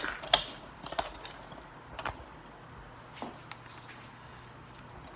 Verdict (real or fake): real